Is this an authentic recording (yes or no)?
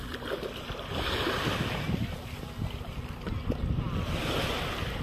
yes